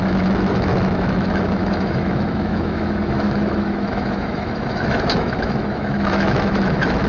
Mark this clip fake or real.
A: fake